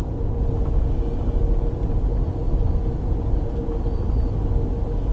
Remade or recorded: recorded